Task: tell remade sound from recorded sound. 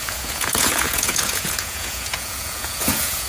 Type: remade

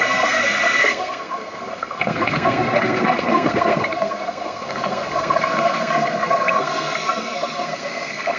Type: remade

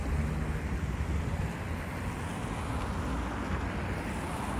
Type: recorded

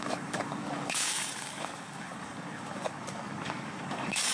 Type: remade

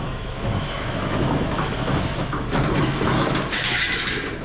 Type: remade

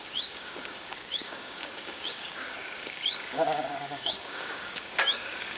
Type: remade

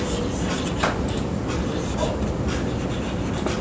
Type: recorded